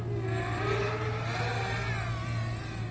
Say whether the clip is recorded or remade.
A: remade